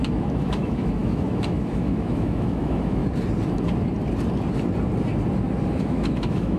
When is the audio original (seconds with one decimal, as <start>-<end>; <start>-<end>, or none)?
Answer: 3.0-5.8